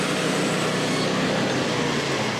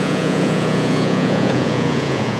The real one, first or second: first